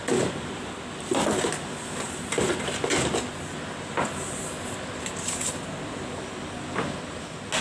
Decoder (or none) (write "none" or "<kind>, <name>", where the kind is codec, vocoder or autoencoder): none